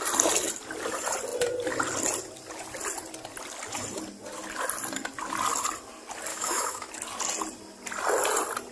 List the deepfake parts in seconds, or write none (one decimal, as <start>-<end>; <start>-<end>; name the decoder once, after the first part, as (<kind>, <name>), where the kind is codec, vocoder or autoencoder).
6.3-6.9 (autoencoder, DAC-VAE)